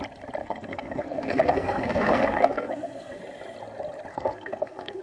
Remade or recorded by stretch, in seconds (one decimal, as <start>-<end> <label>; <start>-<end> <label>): 0.0-0.4 recorded; 0.4-3.2 remade; 3.2-4.1 recorded; 4.1-5.0 remade

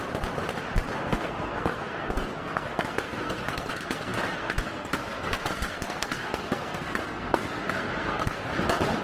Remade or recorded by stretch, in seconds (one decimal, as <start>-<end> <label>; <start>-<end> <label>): 0.0-1.0 recorded; 1.0-8.5 remade; 8.5-9.0 recorded

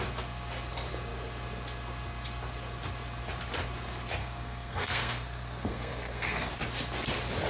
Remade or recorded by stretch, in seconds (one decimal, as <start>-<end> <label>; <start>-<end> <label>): 0.0-4.2 recorded; 4.2-6.5 remade; 6.5-7.5 recorded

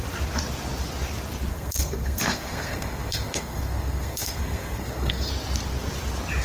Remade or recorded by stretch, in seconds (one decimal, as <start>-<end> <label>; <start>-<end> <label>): 0.0-1.5 recorded; 1.5-5.3 remade; 5.3-6.4 recorded

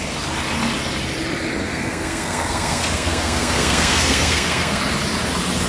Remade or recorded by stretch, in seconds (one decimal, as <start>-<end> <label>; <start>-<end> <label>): 0.0-1.6 recorded; 1.6-4.8 remade; 4.8-5.7 recorded

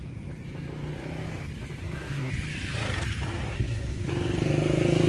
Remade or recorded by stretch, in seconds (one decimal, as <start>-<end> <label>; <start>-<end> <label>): 0.0-1.8 recorded; 1.8-2.3 remade; 2.3-3.5 recorded; 3.5-4.1 remade; 4.1-5.1 recorded

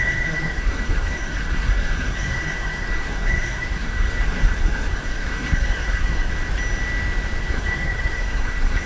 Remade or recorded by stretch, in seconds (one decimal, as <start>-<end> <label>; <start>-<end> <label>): 0.0-6.3 remade; 6.3-7.4 recorded; 7.4-8.9 remade